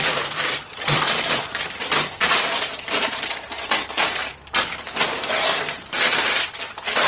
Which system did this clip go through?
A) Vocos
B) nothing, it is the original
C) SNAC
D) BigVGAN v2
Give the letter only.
D